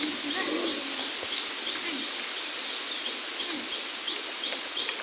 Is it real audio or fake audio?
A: real